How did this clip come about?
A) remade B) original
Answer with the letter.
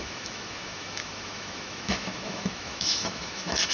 A